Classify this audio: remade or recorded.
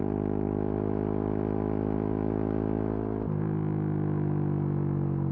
recorded